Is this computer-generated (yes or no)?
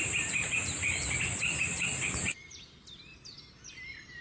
no